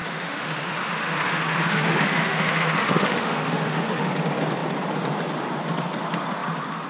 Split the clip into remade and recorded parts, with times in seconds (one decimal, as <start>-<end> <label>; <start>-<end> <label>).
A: 0.0-4.1 remade; 4.1-6.9 recorded